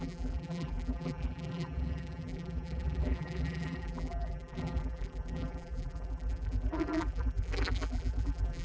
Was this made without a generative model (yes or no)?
no